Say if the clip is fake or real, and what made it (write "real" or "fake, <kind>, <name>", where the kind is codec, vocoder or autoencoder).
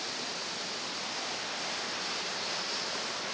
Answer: real